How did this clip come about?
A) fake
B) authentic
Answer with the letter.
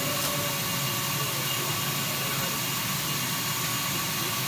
B